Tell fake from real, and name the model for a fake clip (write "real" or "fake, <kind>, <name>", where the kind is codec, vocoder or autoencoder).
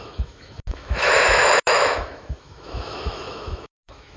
fake, autoencoder, DAC-VAE